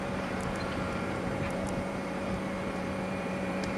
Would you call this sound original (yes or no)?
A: no